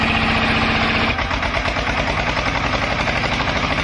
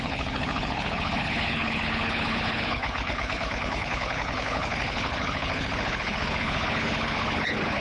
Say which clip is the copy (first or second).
second